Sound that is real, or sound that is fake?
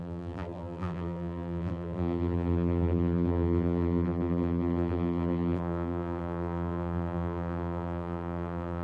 fake